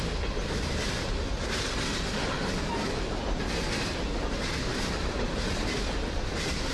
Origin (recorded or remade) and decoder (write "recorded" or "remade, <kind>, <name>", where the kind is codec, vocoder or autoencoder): recorded